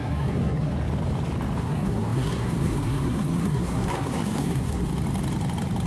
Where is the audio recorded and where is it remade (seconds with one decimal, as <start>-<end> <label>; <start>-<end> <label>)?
0.0-0.7 remade; 0.7-1.6 recorded; 1.6-4.9 remade; 4.9-5.9 recorded